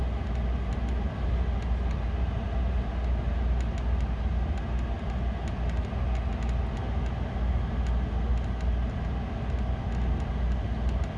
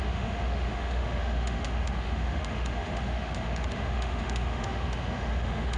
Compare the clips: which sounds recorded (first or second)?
first